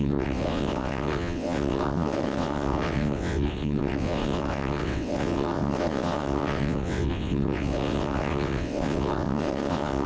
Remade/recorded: remade